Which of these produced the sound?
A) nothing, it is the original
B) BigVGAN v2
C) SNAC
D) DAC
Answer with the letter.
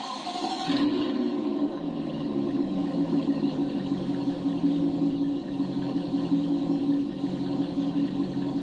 D